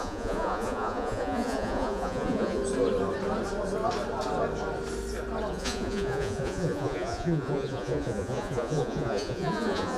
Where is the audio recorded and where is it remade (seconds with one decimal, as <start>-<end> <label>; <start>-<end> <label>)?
0.0-2.6 remade; 2.6-5.5 recorded; 5.5-10.0 remade